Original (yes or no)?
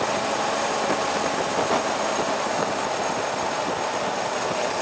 yes